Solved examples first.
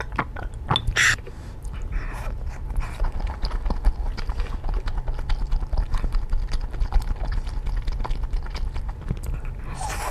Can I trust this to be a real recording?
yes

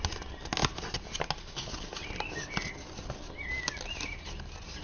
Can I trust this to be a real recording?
yes